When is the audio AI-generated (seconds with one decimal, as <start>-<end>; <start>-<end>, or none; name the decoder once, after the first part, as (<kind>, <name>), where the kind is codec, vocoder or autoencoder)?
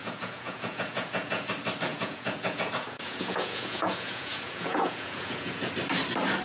0.0-1.5 (vocoder, Vocos); 1.9-5.7